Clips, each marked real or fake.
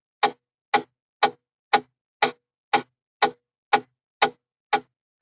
real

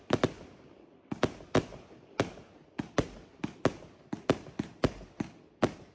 real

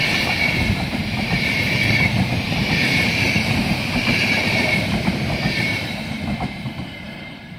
fake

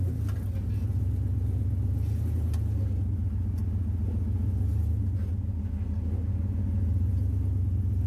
real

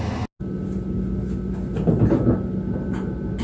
real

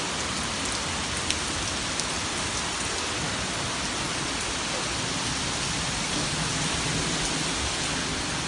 real